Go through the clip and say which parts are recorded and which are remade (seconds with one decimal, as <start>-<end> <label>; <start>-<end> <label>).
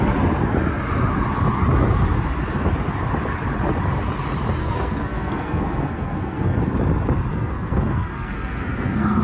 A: 0.0-4.6 recorded; 4.6-6.6 remade; 6.6-7.3 recorded; 7.3-9.2 remade